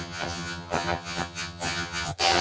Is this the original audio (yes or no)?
no